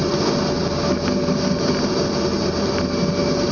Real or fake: real